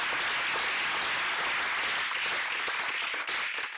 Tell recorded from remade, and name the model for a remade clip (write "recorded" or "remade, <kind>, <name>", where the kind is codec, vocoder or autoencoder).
recorded